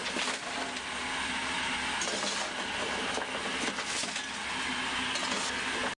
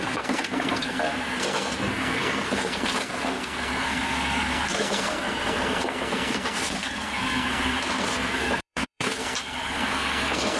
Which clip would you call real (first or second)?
first